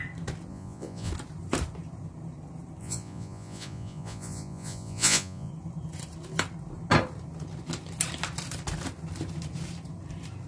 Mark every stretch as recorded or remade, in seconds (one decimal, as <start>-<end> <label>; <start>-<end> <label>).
0.0-0.5 recorded; 0.5-1.1 remade; 1.1-2.8 recorded; 2.8-5.5 remade; 5.5-10.5 recorded